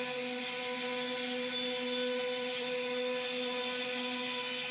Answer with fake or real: real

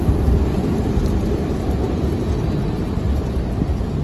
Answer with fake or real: fake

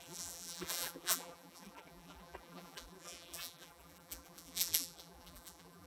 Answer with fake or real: fake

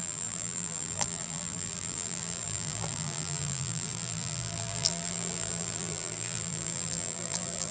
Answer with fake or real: fake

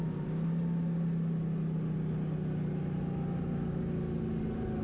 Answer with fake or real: real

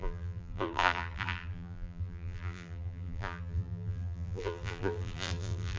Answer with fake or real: fake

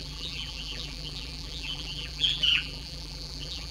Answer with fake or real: fake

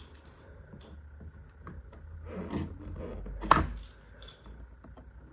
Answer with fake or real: real